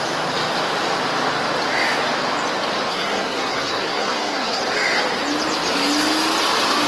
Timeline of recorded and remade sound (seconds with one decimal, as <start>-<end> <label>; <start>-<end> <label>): 0.0-2.9 recorded; 2.9-4.6 remade; 4.6-6.9 recorded